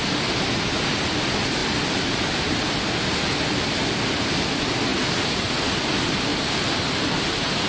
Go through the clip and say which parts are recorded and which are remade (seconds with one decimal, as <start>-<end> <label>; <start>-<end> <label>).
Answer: 0.0-1.6 recorded; 1.6-2.9 remade; 2.9-4.9 recorded; 4.9-5.5 remade; 5.5-6.3 recorded; 6.3-7.7 remade